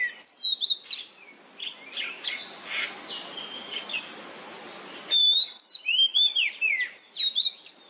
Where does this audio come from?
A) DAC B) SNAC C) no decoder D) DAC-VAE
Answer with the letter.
C